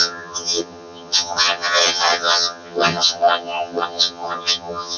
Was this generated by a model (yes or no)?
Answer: yes